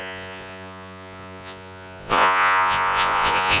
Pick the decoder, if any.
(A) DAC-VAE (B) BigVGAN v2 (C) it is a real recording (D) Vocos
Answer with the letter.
D